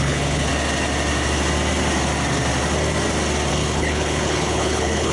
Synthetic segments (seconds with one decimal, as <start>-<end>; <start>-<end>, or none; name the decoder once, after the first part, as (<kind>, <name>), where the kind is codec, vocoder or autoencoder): 0.0-0.5 (codec, HILCodec); 3.5-5.1